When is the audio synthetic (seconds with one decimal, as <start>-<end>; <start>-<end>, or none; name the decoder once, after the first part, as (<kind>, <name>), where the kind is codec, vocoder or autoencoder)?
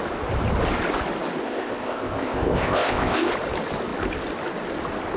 1.4-3.3 (codec, ZipCodec)